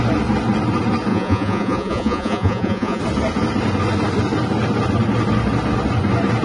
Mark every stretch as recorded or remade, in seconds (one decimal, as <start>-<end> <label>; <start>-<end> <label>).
0.0-1.1 recorded; 1.1-3.0 remade; 3.0-6.4 recorded